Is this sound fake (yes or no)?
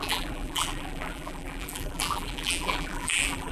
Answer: yes